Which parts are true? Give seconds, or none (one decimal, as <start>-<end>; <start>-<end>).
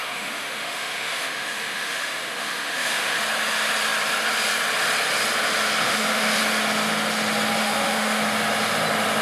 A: 3.2-5.8; 6.4-7.6; 8.2-9.2